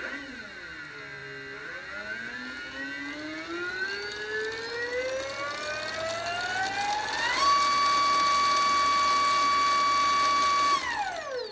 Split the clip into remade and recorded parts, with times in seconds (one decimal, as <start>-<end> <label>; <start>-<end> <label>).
0.0-11.5 recorded

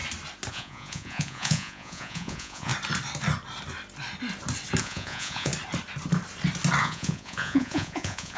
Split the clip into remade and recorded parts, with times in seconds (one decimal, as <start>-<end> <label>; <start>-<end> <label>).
0.0-0.5 recorded; 0.5-2.7 remade; 2.7-4.8 recorded; 4.8-5.5 remade; 5.5-6.8 recorded; 6.8-8.4 remade

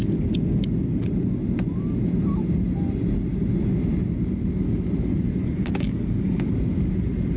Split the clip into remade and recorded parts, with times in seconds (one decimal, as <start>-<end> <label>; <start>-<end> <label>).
0.0-5.4 recorded; 5.4-6.5 remade; 6.5-7.4 recorded

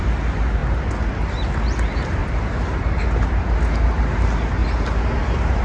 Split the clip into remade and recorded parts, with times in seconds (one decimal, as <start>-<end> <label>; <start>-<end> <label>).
0.0-0.6 recorded; 0.6-1.1 remade; 1.1-2.2 recorded; 2.2-3.6 remade; 3.6-5.6 recorded